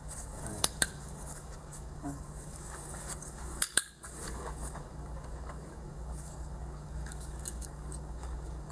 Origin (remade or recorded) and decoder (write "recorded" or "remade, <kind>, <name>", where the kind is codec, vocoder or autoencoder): remade, codec, DAC